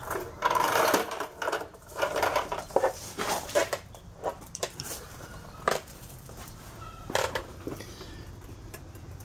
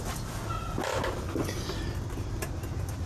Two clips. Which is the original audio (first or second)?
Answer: second